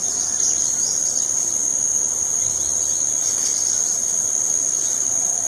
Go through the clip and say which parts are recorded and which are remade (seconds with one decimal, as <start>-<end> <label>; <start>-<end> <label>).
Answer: 0.0-5.5 recorded